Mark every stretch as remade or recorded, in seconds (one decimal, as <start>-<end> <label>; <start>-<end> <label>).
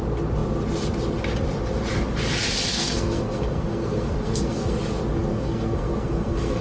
0.0-2.7 recorded; 2.7-4.8 remade; 4.8-5.3 recorded; 5.3-6.6 remade